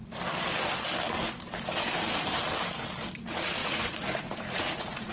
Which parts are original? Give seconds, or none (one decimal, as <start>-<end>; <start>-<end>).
0.0-3.6